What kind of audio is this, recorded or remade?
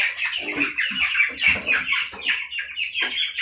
remade